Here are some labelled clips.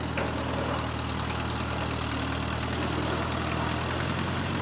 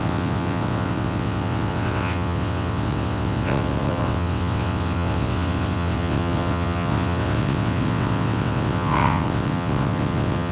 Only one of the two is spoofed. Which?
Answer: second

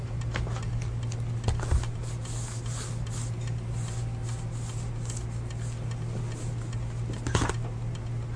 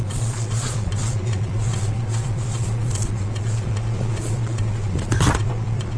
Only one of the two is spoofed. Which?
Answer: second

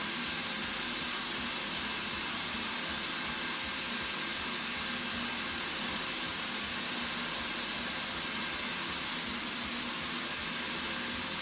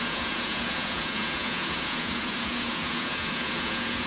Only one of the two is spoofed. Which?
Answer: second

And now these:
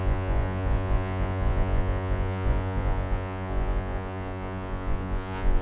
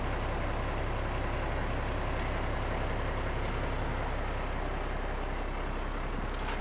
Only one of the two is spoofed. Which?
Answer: first